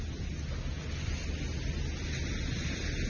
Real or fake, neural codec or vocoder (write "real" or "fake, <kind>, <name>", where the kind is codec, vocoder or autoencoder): real